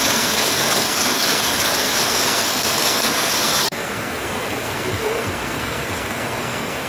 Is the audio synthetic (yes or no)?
yes